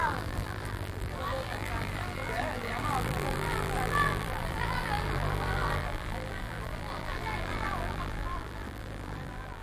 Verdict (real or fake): fake